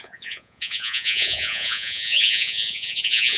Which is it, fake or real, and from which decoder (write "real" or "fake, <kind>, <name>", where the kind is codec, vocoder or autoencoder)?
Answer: fake, vocoder, Vocos